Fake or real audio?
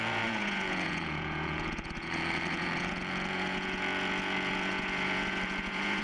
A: fake